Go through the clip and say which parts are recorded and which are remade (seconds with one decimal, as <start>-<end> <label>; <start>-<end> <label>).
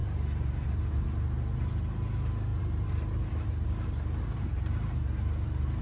0.0-2.5 recorded; 2.5-4.7 remade; 4.7-5.8 recorded